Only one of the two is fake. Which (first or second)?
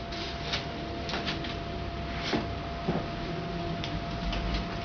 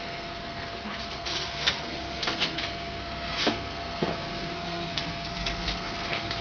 second